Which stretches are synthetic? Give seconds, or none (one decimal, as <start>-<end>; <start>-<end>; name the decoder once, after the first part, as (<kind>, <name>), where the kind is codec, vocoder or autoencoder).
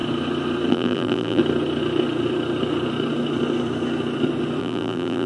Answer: 0.7-1.4 (vocoder, BigVGAN v2); 4.6-5.3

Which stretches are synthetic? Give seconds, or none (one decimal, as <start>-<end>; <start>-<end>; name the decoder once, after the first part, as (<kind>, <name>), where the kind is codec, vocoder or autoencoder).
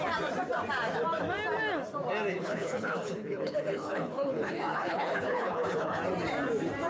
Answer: 2.4-6.0 (codec, HILCodec)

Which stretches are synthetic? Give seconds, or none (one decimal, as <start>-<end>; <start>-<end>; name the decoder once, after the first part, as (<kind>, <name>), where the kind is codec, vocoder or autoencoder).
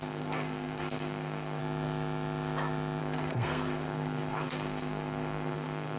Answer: 0.0-1.6 (codec, SNAC); 3.0-6.0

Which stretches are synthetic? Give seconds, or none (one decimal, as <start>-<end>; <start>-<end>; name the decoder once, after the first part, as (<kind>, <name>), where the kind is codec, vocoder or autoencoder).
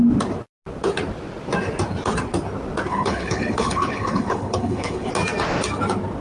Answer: 2.9-5.1 (codec, HILCodec)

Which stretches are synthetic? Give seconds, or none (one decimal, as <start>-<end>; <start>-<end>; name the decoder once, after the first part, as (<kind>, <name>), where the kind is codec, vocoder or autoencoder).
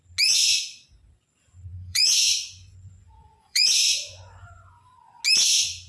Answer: 1.7-5.2 (vocoder, Vocos)